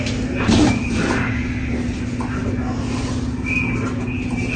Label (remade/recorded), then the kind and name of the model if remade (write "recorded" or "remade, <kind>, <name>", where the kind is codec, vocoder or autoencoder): recorded